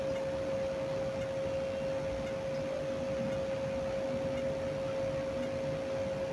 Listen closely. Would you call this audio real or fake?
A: real